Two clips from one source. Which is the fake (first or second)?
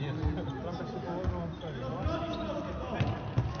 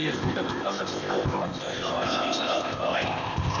second